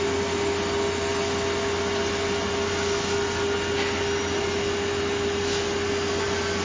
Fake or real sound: real